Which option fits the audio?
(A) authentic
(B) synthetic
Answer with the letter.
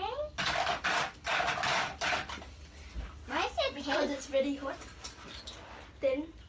A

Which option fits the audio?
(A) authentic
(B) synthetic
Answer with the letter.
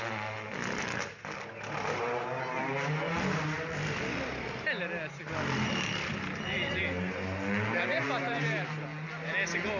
A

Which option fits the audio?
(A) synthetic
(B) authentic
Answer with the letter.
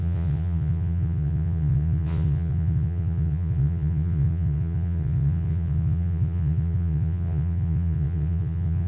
A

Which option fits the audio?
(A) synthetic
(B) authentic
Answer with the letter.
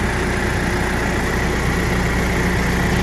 B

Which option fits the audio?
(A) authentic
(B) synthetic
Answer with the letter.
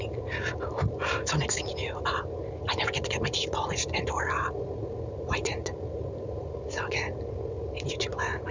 A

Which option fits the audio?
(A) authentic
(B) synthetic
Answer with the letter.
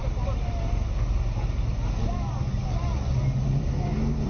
A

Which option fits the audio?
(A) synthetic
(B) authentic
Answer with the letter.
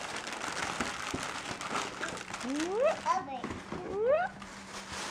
B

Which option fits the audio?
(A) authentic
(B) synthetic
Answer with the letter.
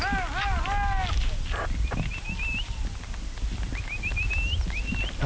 A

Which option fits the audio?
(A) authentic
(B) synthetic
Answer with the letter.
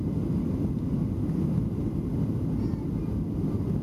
A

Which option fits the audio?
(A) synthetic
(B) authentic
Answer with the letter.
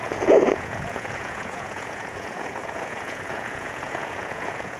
A